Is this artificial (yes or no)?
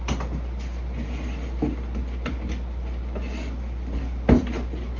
no